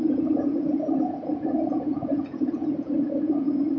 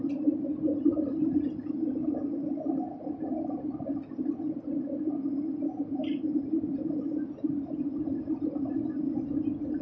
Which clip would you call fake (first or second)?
first